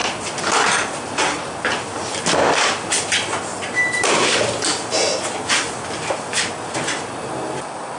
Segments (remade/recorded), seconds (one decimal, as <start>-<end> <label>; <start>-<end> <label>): 0.0-3.5 remade; 3.5-7.0 recorded; 7.0-8.0 remade